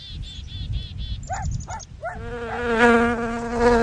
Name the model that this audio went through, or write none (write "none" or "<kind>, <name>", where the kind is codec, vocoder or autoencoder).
none